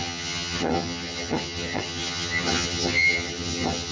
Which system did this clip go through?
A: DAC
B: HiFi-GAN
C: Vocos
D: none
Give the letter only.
B